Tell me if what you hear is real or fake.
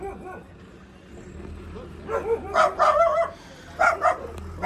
real